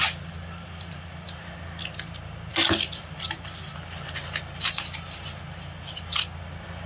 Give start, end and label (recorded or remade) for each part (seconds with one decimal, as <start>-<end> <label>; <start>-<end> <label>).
0.0-6.9 recorded